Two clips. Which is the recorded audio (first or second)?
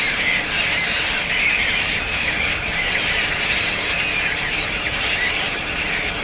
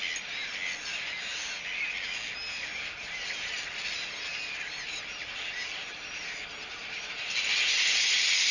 second